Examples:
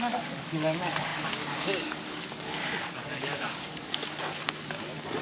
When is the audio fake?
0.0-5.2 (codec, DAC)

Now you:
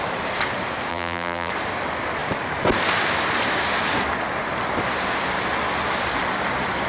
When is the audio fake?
0.9-1.5 (vocoder, BigVGAN v2)

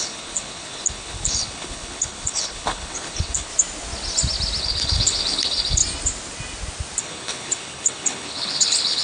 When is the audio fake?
0.0-3.5 (codec, HILCodec); 4.6-5.8; 7.0-9.0

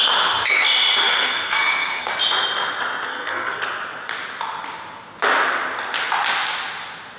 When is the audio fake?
1.0-2.1 (codec, SNAC); 3.1-3.6

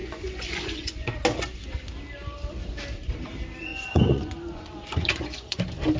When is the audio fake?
0.0-1.1 (vocoder, Vocos); 3.7-5.6

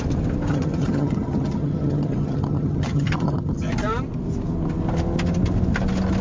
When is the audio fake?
0.5-3.7 (vocoder, HiFi-GAN)

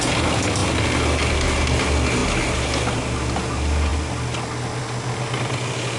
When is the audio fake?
none